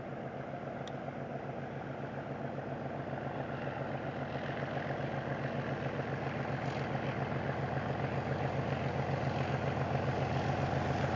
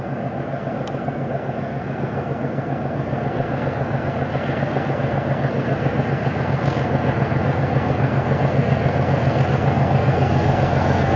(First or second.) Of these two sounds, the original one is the first